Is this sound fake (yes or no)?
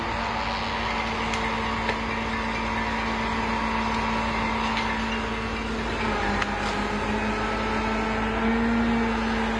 no